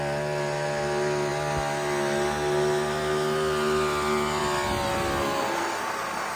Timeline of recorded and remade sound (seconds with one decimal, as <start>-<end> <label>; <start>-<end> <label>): 0.0-5.2 recorded; 5.2-6.4 remade

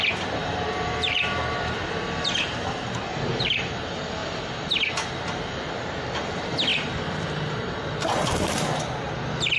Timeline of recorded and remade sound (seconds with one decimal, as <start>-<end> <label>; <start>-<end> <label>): 0.0-0.4 recorded; 0.4-3.7 remade; 3.7-9.6 recorded